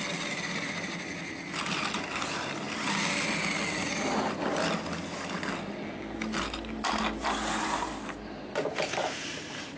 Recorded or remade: recorded